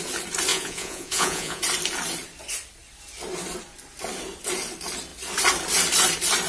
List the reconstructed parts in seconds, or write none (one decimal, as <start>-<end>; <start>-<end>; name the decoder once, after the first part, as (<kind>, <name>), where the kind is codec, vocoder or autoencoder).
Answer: 0.5-1.6 (vocoder, Vocos)